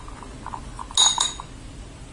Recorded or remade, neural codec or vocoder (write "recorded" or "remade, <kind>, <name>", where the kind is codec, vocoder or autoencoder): recorded